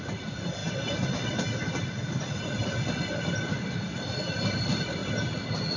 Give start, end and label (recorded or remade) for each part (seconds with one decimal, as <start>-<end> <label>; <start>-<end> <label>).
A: 0.0-5.0 remade; 5.0-5.8 recorded